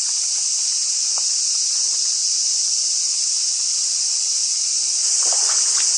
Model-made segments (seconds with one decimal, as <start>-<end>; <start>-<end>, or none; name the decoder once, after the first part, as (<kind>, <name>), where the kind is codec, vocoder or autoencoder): none